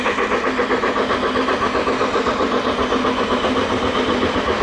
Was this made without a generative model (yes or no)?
yes